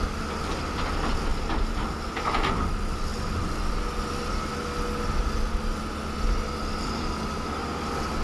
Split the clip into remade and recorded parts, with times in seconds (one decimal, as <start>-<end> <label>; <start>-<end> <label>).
0.0-8.2 recorded